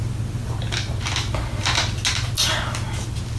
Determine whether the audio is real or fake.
real